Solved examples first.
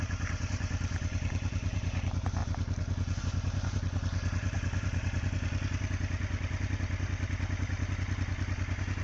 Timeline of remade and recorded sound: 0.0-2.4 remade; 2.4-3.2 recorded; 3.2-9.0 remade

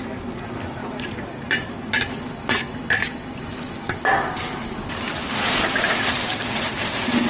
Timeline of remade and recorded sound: 0.0-0.8 recorded; 0.8-1.7 remade; 1.7-4.6 recorded; 4.6-5.2 remade; 5.2-7.3 recorded

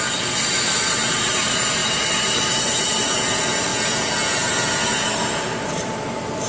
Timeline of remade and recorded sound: 0.0-3.7 remade; 3.7-4.5 recorded; 4.5-6.5 remade